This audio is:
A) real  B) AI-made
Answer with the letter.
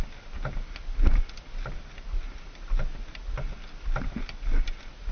A